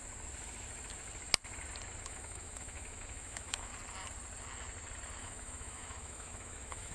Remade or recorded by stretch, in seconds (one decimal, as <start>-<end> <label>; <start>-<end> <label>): 0.0-2.0 recorded; 2.0-3.7 remade; 3.7-5.2 recorded; 5.2-6.9 remade